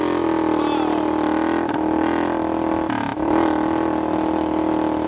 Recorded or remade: recorded